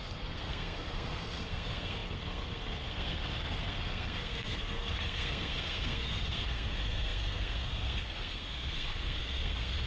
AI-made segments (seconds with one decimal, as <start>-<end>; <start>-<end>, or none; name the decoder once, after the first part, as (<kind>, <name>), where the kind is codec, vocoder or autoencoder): 0.0-9.9 (codec, SNAC)